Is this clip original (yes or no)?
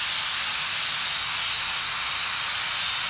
yes